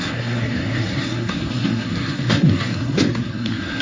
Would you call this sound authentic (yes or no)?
no